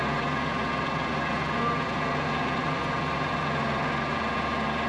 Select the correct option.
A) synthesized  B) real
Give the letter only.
B